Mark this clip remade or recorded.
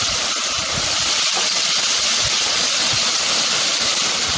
recorded